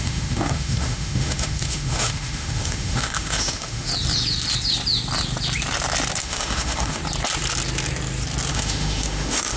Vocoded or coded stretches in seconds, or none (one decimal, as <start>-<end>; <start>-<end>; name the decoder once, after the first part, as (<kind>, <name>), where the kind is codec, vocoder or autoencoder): 0.0-3.9 (autoencoder, DAC-VAE); 6.2-7.0; 8.5-9.6